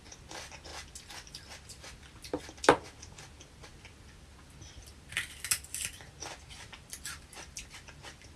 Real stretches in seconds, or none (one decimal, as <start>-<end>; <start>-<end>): 0.0-8.4